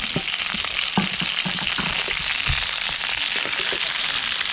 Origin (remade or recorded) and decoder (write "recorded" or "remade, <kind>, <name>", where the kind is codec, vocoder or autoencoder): recorded